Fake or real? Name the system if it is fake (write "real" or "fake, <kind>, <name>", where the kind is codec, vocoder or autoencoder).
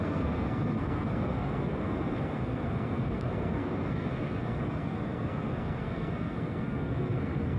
fake, codec, SNAC